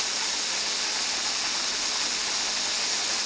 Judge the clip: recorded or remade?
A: recorded